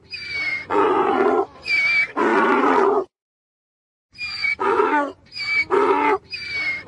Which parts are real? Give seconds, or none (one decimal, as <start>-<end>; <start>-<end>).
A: 0.0-0.5; 1.7-2.3; 3.5-4.4; 5.3-6.9